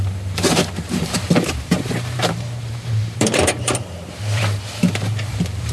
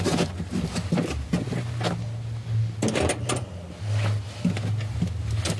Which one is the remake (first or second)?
first